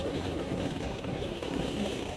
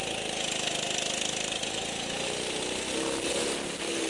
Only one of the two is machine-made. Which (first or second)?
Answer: first